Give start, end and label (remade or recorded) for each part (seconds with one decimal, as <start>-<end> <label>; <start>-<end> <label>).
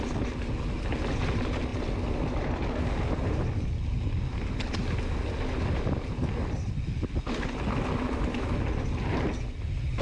0.0-10.0 recorded